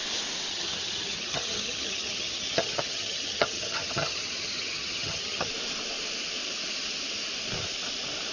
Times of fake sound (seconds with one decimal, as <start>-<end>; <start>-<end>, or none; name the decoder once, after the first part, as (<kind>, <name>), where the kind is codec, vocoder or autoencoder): 0.5-5.5 (vocoder, HiFi-GAN)